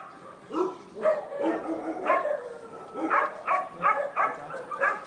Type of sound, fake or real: real